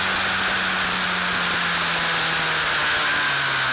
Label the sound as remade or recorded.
recorded